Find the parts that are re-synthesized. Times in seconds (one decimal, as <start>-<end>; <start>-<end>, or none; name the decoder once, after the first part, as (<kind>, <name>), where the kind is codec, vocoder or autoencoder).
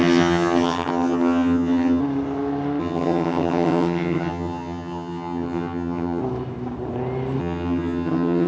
0.0-2.0 (vocoder, HiFi-GAN); 2.8-6.2; 7.4-8.5